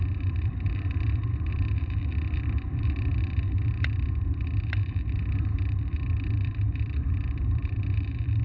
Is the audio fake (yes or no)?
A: yes